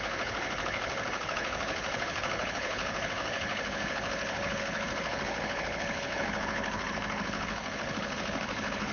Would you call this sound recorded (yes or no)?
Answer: no